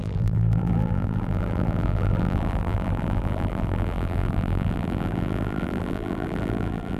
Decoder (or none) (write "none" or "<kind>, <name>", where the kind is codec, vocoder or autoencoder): vocoder, BigVGAN v2